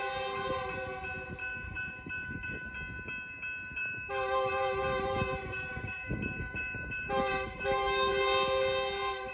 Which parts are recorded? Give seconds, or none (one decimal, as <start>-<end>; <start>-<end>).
0.0-1.4; 2.7-3.8; 8.1-9.3